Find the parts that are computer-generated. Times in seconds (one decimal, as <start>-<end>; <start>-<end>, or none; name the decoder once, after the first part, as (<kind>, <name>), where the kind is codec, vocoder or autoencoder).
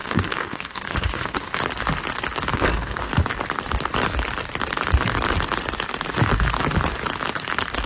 0.0-1.5 (codec, SNAC); 2.5-3.1